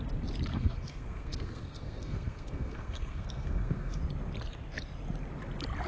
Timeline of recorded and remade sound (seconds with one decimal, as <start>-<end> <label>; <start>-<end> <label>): 0.0-0.5 recorded; 0.5-4.0 remade; 4.0-5.9 recorded